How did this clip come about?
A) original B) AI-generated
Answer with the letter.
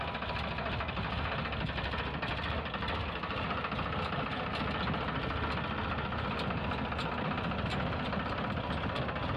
A